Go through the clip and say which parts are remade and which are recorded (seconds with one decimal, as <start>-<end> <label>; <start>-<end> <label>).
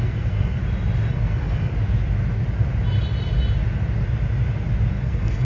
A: 0.0-0.6 remade; 0.6-1.1 recorded; 1.1-1.7 remade; 1.7-4.9 recorded; 4.9-5.4 remade